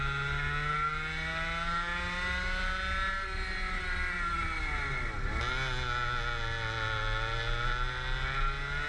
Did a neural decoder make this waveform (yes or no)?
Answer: no